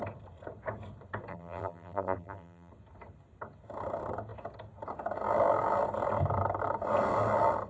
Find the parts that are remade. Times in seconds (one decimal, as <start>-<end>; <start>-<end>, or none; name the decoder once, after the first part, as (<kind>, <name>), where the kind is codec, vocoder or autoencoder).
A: 1.3-2.7 (vocoder, BigVGAN v2)